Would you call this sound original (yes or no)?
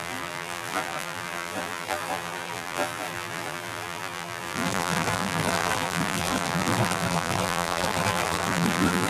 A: no